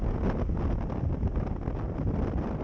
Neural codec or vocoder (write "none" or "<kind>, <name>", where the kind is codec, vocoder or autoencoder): none